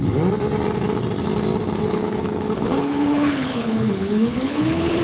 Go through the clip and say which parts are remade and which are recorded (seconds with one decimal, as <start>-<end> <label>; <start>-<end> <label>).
0.0-1.8 recorded; 1.8-5.0 remade